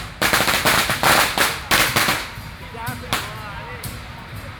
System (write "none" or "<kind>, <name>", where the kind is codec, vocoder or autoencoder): none